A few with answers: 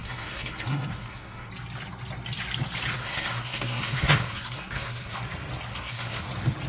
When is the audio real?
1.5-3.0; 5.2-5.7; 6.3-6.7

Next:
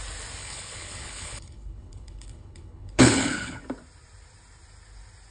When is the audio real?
0.0-0.4; 3.6-5.3

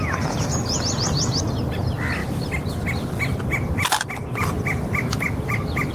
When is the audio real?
0.0-5.9